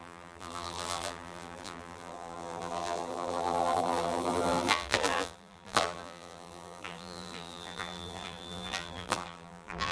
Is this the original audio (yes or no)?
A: no